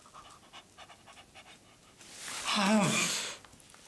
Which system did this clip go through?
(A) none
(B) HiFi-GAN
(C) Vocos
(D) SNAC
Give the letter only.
A